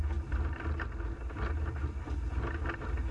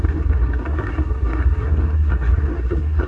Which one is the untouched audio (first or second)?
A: first